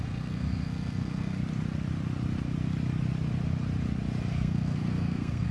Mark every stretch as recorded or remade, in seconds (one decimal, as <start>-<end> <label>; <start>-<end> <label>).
0.0-1.4 remade; 1.4-4.3 recorded; 4.3-5.5 remade